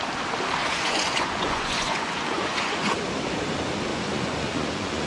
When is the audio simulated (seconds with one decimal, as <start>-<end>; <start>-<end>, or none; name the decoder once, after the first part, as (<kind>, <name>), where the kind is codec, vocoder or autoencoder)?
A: 0.6-3.1 (vocoder, Vocos); 3.9-5.1